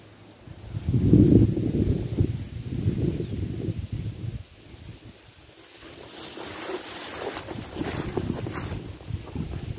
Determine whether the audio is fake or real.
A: real